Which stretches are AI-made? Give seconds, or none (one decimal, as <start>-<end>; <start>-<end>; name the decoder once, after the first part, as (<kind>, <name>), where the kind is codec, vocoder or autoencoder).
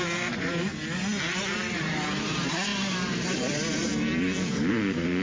0.0-0.7 (vocoder, BigVGAN v2); 1.4-3.9; 4.7-5.2